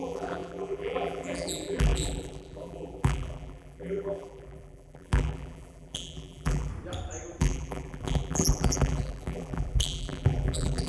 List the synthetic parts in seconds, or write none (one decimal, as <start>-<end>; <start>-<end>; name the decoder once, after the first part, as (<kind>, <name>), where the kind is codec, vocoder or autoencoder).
0.0-6.7 (vocoder, BigVGAN v2); 7.4-10.9